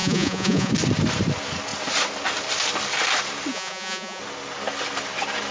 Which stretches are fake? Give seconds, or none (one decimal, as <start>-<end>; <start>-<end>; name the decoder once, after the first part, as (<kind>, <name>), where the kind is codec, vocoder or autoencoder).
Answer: 0.0-0.7 (vocoder, Vocos); 3.5-4.2